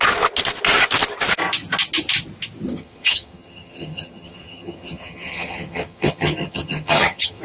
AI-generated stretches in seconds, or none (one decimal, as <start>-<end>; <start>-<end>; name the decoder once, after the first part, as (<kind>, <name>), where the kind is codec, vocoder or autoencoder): 2.7-7.4 (vocoder, HiFi-GAN)